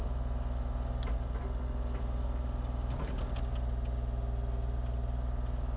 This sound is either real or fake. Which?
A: real